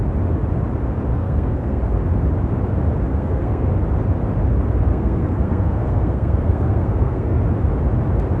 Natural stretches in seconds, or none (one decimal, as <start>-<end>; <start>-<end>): 0.0-1.1; 1.8-3.1; 3.7-4.9; 7.4-8.4